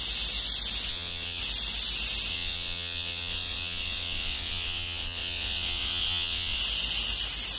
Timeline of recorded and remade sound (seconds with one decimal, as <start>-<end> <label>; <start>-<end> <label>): 0.0-0.9 recorded; 0.9-1.4 remade; 1.4-2.3 recorded; 2.3-6.6 remade; 6.6-7.6 recorded